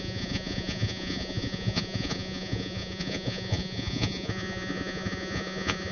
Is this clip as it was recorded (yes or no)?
no